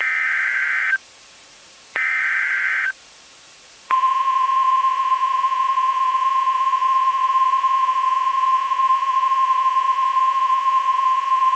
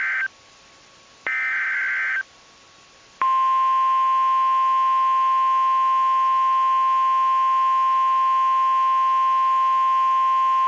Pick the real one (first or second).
second